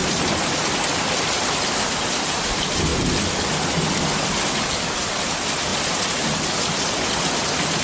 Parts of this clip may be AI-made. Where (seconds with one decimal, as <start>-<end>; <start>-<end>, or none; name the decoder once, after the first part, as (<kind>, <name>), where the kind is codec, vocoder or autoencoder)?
0.0-1.1 (vocoder, BigVGAN v2); 5.7-6.5